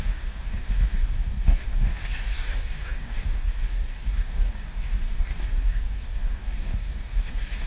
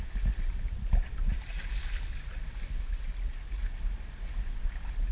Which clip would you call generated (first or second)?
first